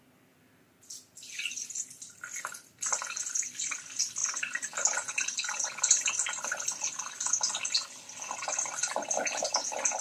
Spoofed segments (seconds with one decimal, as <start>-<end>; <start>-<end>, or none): 1.6-3.8